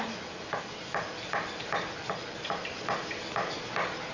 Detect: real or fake real